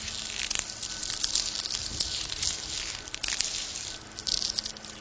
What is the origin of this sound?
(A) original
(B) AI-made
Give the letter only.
A